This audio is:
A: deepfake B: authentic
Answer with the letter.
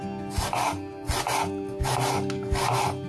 B